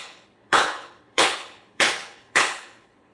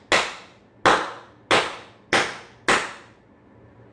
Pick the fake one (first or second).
first